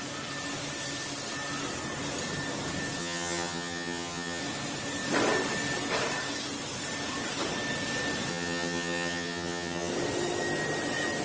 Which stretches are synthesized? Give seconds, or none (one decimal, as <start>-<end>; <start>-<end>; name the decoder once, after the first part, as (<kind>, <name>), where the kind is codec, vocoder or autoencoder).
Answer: 3.0-4.4 (vocoder, HiFi-GAN); 8.3-9.9